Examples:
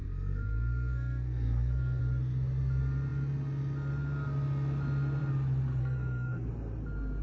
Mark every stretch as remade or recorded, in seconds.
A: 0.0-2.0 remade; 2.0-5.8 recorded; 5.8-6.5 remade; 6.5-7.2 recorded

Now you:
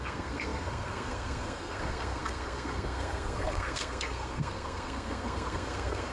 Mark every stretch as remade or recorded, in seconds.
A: 0.0-6.1 remade

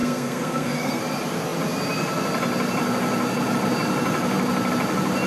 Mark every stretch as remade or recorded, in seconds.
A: 0.0-1.0 remade; 1.0-5.3 recorded

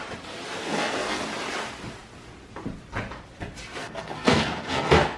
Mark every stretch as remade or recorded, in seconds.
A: 0.0-0.6 recorded; 0.6-1.2 remade; 1.2-3.8 recorded; 3.8-5.2 remade

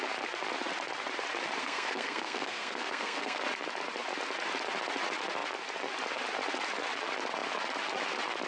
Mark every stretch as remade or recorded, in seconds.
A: 0.0-1.6 recorded; 1.6-3.4 remade; 3.4-8.5 recorded

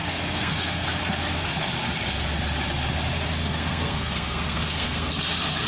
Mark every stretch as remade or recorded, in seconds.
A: 0.0-1.0 remade; 1.0-3.4 recorded; 3.4-5.1 remade; 5.1-5.7 recorded

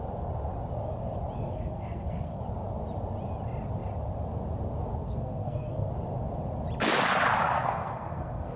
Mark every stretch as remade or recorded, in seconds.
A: 0.0-1.4 recorded; 1.4-2.4 remade; 2.4-5.0 recorded; 5.0-5.9 remade; 5.9-7.4 recorded; 7.4-8.6 remade